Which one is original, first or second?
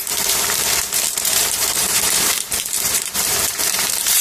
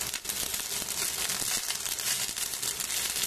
second